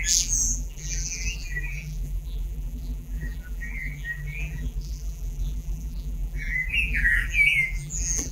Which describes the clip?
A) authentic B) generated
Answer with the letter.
B